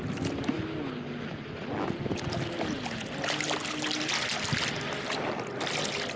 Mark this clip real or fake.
real